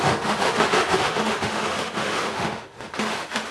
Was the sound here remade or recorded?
remade